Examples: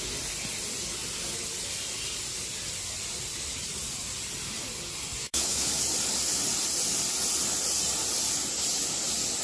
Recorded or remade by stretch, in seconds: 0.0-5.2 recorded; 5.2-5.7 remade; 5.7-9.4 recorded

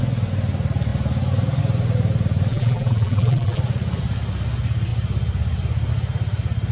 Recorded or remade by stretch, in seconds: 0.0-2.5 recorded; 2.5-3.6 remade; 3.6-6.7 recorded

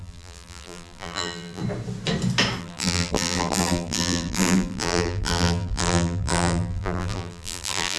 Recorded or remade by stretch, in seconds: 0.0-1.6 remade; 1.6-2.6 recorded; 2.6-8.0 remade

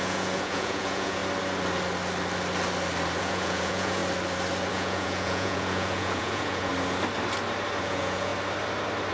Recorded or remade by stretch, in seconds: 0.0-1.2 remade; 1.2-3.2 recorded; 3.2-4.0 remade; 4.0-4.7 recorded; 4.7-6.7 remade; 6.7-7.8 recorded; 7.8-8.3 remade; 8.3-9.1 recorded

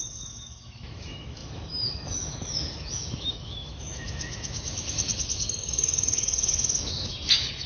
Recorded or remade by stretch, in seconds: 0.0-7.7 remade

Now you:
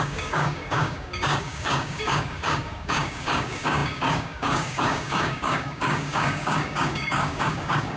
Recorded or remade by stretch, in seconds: 0.0-8.0 remade